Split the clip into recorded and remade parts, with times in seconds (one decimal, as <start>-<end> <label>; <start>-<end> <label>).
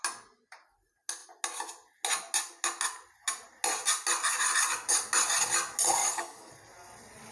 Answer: 0.0-6.0 recorded; 6.0-6.5 remade; 6.5-7.3 recorded